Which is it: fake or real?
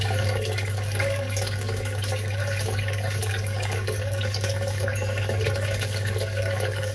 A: fake